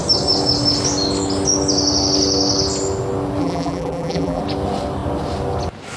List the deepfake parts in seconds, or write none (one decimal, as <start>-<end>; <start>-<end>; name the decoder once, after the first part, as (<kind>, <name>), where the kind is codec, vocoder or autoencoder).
3.4-4.4 (vocoder, BigVGAN v2)